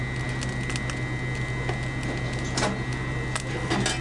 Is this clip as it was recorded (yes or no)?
yes